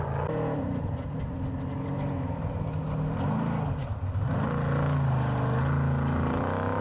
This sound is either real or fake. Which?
real